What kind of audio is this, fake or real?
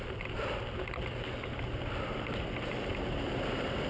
real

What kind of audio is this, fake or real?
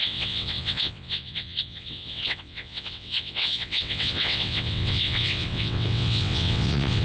fake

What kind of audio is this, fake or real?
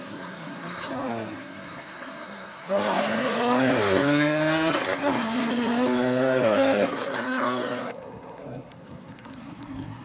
fake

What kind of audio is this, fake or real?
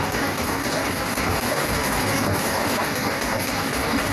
fake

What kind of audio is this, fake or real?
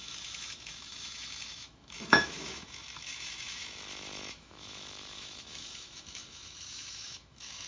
fake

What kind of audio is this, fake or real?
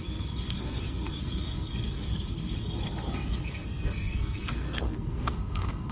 fake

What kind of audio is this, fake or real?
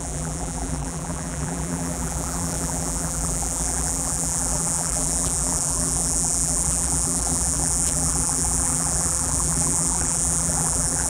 fake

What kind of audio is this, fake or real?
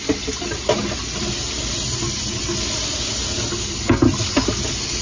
real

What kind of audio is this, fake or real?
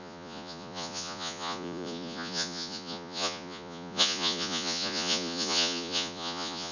fake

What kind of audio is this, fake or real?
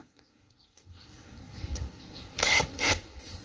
fake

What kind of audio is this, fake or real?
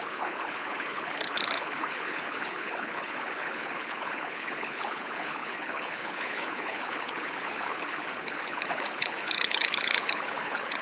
fake